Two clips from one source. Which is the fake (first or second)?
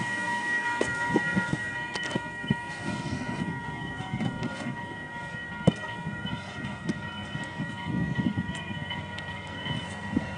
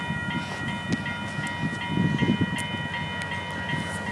first